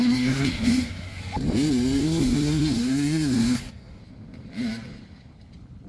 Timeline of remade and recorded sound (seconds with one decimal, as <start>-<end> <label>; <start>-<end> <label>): 0.0-1.2 remade; 1.2-2.0 recorded; 2.0-4.0 remade; 4.0-5.9 recorded